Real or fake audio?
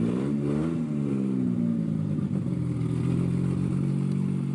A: real